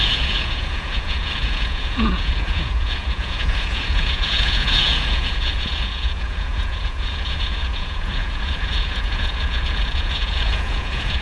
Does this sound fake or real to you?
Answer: fake